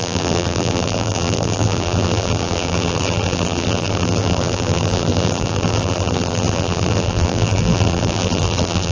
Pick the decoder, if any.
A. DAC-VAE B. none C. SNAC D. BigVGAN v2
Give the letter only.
D